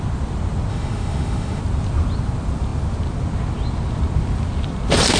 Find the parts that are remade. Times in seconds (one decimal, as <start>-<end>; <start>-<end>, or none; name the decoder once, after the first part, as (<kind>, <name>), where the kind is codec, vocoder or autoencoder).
0.7-1.6 (autoencoder, DAC-VAE)